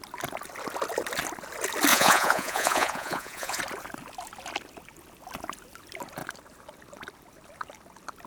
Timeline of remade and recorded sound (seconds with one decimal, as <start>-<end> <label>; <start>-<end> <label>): 0.0-1.9 recorded; 1.9-3.6 remade; 3.6-8.3 recorded